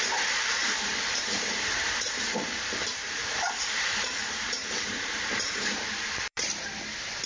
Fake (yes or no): yes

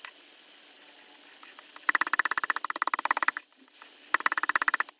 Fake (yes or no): no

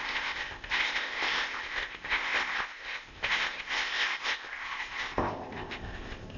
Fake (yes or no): yes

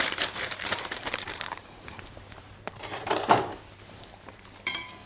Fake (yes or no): yes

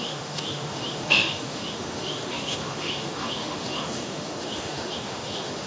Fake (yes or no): yes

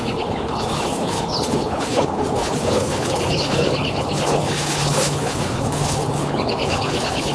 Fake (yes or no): yes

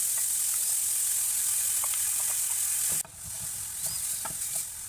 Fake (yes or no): no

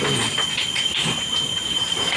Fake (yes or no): no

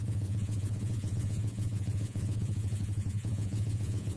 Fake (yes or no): yes